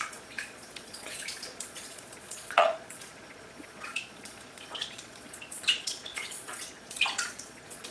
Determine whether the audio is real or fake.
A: fake